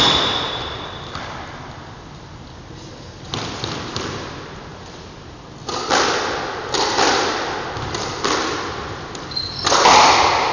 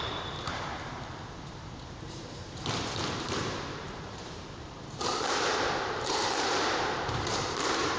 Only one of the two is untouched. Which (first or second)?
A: first